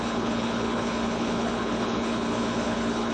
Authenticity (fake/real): fake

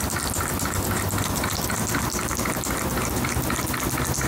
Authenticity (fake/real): real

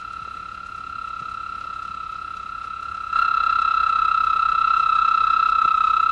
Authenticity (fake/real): fake